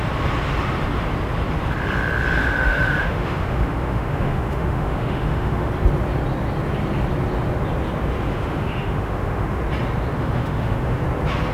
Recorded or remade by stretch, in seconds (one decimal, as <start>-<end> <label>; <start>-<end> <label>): 0.0-2.4 recorded; 2.4-5.7 remade; 5.7-8.3 recorded; 8.3-9.6 remade; 9.6-10.2 recorded; 10.2-11.0 remade; 11.0-11.5 recorded